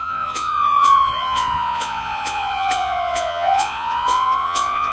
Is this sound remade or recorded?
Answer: remade